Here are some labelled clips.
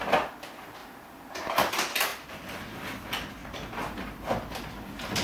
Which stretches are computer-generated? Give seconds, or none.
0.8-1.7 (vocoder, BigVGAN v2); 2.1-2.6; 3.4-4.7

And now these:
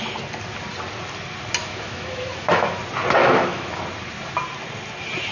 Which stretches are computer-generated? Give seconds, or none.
1.6-2.8 (autoencoder, DAC-VAE); 3.2-3.8

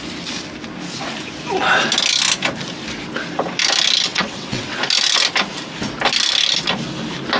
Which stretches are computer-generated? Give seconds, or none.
4.1-4.8 (vocoder, WaveNeXt)

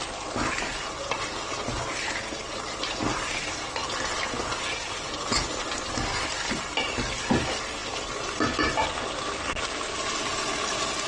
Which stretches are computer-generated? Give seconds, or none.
none

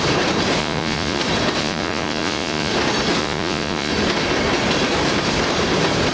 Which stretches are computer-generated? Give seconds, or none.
0.6-1.2 (vocoder, Vocos); 1.6-2.7; 3.2-3.9

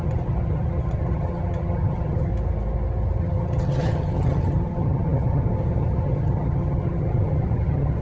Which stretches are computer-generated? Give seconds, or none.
0.0-2.3 (vocoder, HiFi-GAN); 3.2-8.0

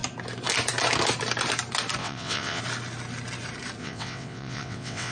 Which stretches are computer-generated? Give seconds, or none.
2.0-2.6 (vocoder, WaveNeXt); 3.8-5.1

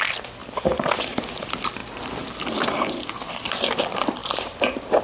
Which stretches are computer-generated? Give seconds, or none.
0.0-4.2 (vocoder, BigVGAN v2)